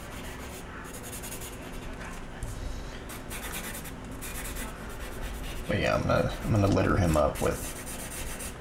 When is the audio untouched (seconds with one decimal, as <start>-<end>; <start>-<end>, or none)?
0.0-4.3; 5.7-6.2; 6.9-8.6